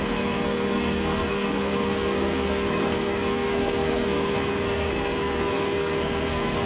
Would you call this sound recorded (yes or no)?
no